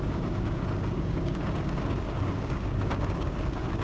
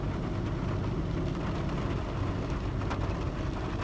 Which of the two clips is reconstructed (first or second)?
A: first